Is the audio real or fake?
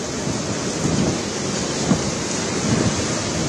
real